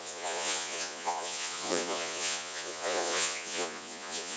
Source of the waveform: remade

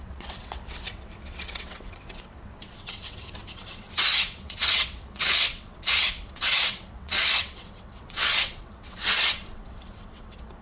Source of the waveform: remade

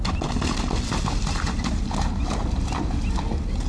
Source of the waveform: recorded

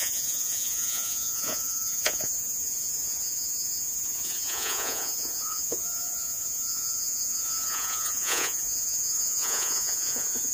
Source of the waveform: remade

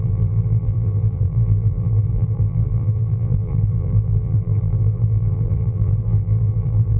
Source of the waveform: remade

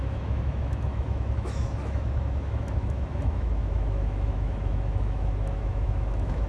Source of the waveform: remade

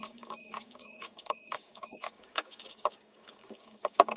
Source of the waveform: remade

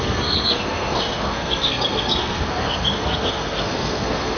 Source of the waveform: remade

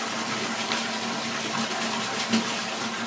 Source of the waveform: recorded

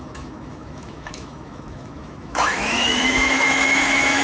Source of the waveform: remade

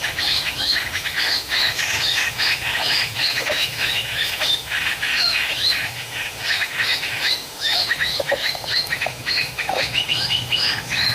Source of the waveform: remade